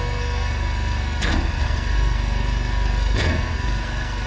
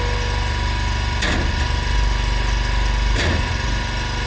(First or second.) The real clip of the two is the second